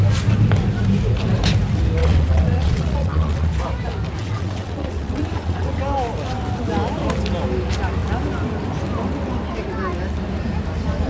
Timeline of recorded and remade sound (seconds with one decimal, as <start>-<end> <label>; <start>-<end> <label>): 0.0-2.0 recorded; 2.0-3.5 remade; 3.5-4.2 recorded; 4.2-5.8 remade; 5.8-11.1 recorded

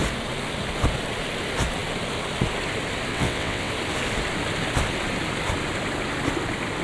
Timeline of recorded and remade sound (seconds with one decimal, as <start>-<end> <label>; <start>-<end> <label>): 0.0-3.1 recorded; 3.1-3.7 remade; 3.7-6.8 recorded

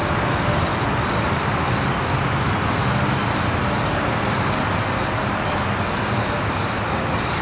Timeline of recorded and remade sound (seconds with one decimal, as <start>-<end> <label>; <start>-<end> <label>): 0.0-7.4 recorded